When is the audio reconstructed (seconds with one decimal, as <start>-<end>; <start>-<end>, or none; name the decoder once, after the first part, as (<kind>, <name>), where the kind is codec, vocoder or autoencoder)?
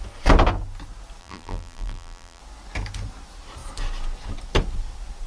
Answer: 1.2-2.4 (vocoder, BigVGAN v2)